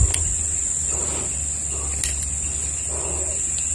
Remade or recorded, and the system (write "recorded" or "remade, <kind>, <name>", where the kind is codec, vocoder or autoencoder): recorded